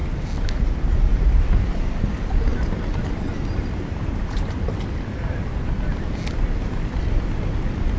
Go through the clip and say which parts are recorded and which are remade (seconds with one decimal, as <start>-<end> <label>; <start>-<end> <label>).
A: 0.0-8.0 recorded